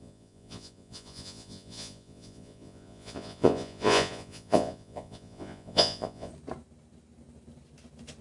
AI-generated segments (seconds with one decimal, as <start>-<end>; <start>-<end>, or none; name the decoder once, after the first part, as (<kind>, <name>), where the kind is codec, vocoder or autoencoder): 0.0-6.3 (vocoder, Vocos)